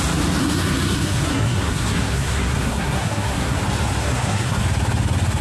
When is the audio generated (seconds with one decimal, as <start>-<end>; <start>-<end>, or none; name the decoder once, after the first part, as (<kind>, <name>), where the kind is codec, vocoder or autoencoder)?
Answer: 0.4-3.6 (codec, SNAC); 4.0-4.6